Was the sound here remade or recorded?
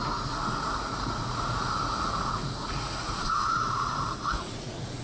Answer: remade